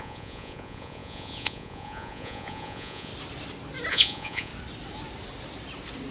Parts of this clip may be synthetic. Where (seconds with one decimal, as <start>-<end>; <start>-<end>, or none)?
0.0-3.1; 3.9-4.5